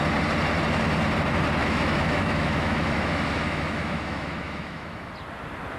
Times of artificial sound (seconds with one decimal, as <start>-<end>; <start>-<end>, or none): 1.6-5.1